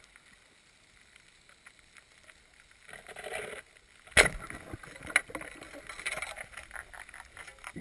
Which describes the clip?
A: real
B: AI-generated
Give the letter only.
A